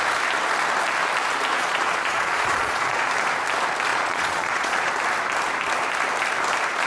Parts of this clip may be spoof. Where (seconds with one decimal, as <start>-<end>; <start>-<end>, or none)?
1.5-3.1; 3.9-4.9